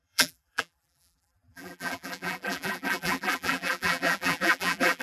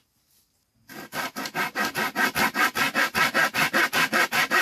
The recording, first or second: second